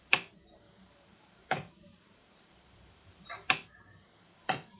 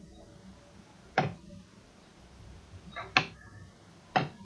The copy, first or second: first